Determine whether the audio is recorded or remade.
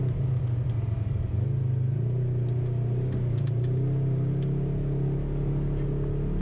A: recorded